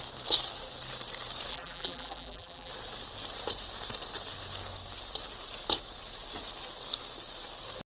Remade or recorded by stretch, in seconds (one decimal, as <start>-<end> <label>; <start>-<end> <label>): 0.0-1.5 recorded; 1.5-2.7 remade; 2.7-7.9 recorded

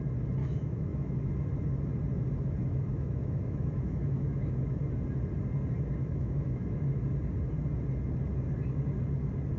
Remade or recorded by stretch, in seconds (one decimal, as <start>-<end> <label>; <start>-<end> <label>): 0.0-0.4 recorded; 0.4-1.3 remade; 1.3-2.6 recorded; 2.6-4.9 remade; 4.9-6.0 recorded; 6.0-7.0 remade; 7.0-9.6 recorded

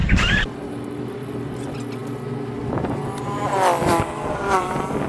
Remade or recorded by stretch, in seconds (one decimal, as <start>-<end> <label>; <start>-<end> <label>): 0.0-1.1 recorded; 1.1-2.0 remade; 2.0-4.6 recorded; 4.6-5.1 remade

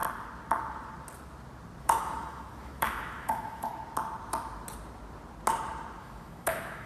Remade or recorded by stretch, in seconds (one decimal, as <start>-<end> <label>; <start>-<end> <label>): 0.0-1.8 recorded; 1.8-3.7 remade; 3.7-6.0 recorded; 6.0-6.9 remade